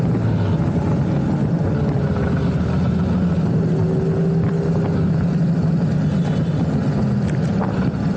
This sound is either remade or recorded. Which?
recorded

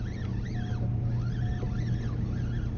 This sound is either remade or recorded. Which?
recorded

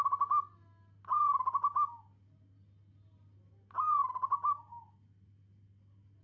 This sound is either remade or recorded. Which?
recorded